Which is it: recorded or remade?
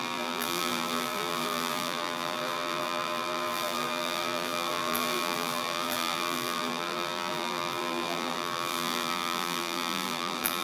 remade